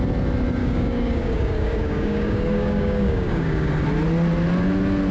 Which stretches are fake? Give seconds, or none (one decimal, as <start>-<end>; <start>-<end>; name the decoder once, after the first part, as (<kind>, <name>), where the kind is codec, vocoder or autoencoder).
0.6-3.7 (codec, DAC)